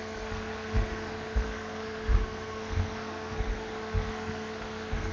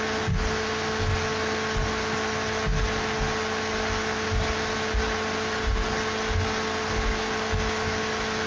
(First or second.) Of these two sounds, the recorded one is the second